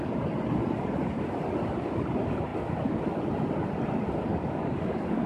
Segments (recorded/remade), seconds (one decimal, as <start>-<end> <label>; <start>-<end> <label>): 0.0-4.3 recorded; 4.3-5.3 remade